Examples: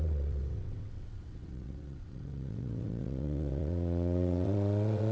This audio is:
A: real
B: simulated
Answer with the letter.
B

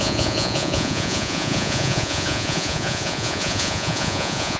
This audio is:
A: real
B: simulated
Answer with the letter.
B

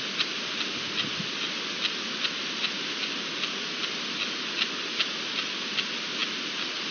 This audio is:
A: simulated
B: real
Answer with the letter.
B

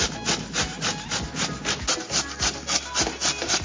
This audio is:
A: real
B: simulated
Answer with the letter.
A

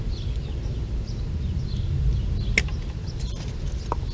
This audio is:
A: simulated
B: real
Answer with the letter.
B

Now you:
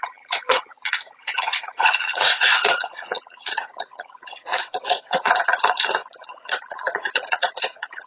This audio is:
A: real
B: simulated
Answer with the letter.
B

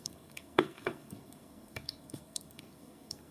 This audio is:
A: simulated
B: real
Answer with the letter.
A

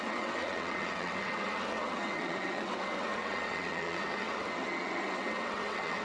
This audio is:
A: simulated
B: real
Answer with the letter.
A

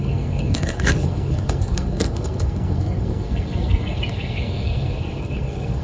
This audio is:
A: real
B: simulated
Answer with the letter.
B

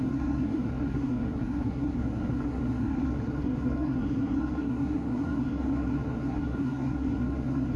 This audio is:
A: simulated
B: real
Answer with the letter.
A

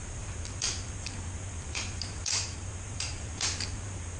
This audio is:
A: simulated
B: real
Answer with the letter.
A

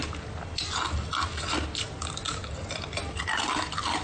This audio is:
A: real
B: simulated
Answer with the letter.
A